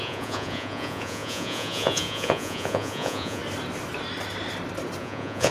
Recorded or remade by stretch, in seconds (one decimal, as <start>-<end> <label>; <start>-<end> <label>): 0.0-3.4 remade; 3.4-5.0 recorded; 5.0-5.5 remade